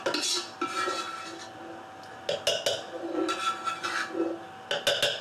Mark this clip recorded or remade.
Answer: recorded